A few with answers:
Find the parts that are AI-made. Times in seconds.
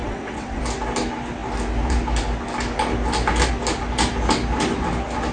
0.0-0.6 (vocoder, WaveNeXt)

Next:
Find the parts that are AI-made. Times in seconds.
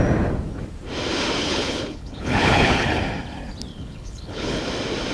1.4-3.0 (codec, HILCodec); 3.7-4.6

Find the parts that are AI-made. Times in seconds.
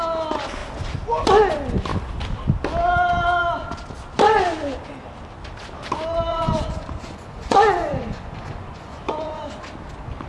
6.3-9.6 (vocoder, Vocos)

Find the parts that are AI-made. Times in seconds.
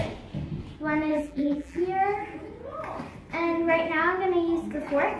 1.1-1.8 (vocoder, BigVGAN v2)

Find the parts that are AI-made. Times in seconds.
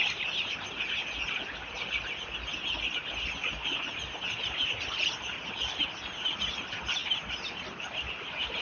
none